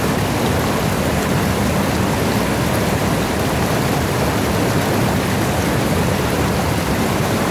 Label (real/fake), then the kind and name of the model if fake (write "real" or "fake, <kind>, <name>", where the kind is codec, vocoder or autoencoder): real